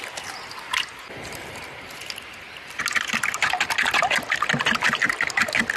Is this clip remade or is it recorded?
recorded